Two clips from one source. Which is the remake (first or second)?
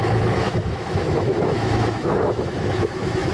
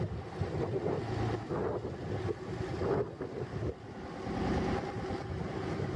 first